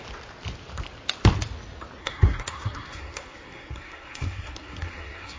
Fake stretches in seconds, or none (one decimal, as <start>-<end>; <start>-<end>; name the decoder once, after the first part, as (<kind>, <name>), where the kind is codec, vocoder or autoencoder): 2.0-5.4 (codec, SNAC)